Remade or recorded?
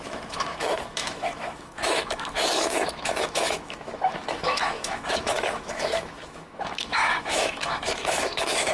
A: remade